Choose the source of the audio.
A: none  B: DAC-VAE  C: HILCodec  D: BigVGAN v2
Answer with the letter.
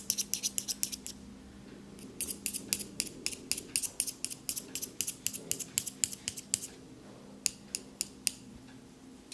A